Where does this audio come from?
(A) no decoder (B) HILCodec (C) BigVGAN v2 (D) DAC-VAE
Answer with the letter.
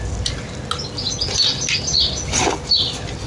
A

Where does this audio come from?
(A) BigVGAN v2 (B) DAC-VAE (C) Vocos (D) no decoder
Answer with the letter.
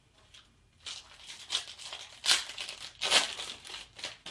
D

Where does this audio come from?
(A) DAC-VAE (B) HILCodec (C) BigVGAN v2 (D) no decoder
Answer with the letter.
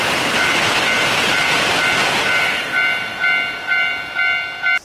C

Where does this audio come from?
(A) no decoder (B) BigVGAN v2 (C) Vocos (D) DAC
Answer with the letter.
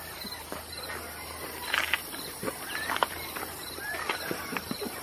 B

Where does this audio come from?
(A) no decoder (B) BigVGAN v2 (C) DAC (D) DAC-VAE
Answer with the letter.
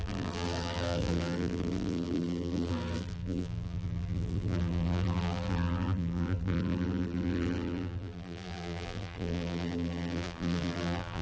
B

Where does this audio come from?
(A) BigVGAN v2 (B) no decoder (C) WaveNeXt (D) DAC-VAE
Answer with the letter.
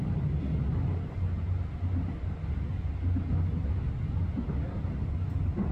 B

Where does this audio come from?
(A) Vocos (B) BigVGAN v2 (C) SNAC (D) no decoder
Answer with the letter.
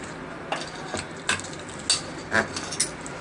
D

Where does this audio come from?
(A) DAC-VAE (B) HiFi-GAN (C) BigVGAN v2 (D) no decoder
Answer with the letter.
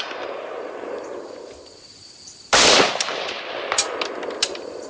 C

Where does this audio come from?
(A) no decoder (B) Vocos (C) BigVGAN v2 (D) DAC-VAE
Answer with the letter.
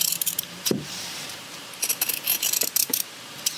C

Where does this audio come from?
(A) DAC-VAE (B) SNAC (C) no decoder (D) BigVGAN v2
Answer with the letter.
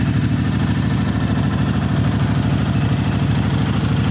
C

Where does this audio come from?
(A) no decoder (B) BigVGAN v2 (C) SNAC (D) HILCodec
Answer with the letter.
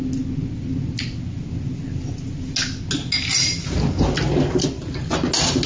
A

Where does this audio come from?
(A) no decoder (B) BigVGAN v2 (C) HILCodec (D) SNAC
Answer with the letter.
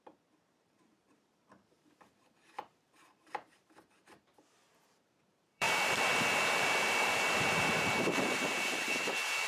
B